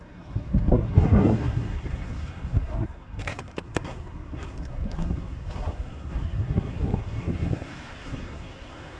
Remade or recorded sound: remade